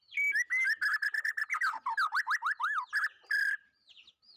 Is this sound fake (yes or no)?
no